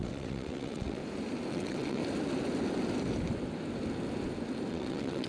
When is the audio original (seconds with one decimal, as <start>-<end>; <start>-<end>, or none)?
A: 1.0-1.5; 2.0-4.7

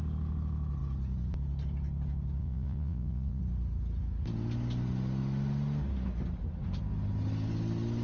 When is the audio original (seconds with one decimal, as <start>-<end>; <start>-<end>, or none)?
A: 0.0-2.4; 3.4-8.0

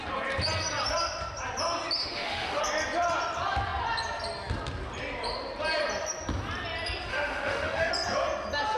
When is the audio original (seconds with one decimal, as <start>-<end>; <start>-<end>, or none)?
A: 0.0-2.0; 2.6-7.1; 7.9-8.8

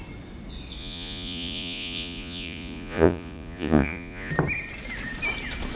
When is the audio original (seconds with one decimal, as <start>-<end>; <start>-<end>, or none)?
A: 0.0-0.8; 4.3-5.8

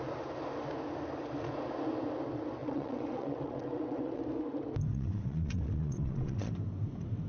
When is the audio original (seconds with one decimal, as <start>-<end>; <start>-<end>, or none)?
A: 0.0-2.6; 4.2-4.9; 6.5-7.3